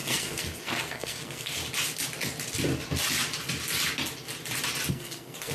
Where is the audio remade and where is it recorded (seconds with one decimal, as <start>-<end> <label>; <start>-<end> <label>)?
0.0-1.6 remade; 1.6-4.9 recorded; 4.9-5.5 remade